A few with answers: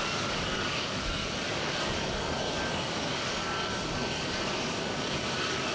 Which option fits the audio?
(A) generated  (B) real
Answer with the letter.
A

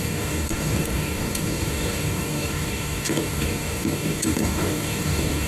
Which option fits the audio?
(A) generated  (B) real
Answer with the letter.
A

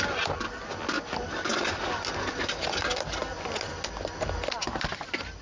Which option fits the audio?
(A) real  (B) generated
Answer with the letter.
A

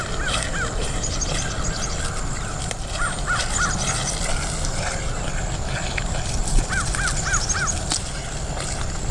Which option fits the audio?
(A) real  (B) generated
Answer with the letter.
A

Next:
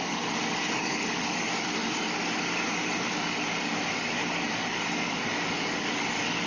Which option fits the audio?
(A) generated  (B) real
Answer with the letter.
A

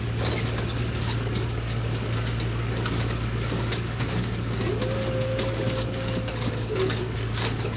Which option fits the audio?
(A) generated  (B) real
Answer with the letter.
A